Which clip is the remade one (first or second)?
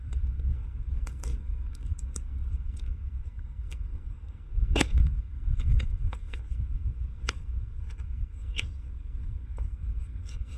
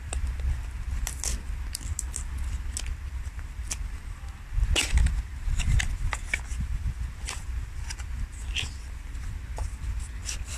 first